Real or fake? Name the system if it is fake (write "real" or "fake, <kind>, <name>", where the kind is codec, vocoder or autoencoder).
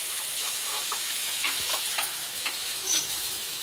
fake, autoencoder, DAC-VAE